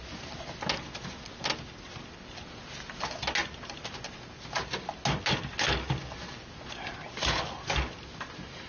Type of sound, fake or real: real